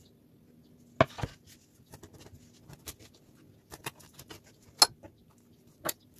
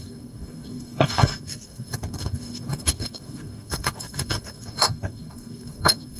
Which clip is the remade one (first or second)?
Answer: second